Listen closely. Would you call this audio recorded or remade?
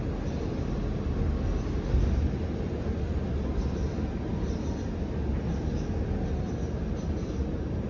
recorded